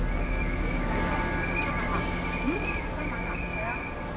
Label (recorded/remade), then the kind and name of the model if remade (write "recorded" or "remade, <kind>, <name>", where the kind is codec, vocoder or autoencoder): recorded